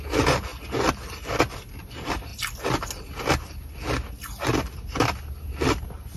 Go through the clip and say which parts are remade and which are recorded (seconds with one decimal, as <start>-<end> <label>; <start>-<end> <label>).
0.0-6.2 recorded